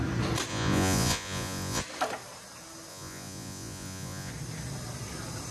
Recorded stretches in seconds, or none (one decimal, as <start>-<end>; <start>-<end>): 0.0-0.5; 1.8-2.9; 4.3-5.5